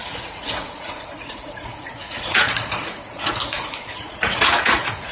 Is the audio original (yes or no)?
no